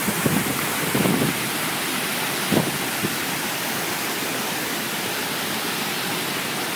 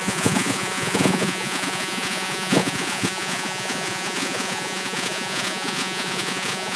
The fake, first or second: second